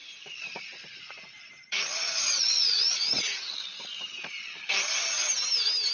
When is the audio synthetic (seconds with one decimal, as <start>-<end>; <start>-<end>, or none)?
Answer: 0.0-3.5